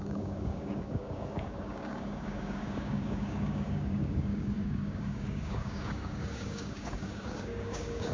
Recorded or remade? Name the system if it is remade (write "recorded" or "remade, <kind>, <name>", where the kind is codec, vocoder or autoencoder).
remade, codec, DAC